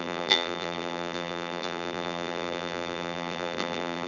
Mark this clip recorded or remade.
remade